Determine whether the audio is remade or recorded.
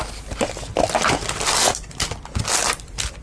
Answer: recorded